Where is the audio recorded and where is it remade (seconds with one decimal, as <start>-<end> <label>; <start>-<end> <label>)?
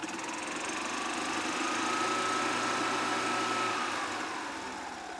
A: 0.0-5.2 recorded